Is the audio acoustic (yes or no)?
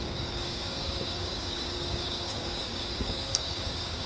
no